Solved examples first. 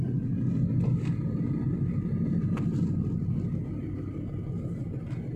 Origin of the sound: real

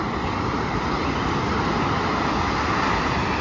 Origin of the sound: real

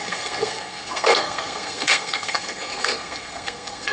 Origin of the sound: fake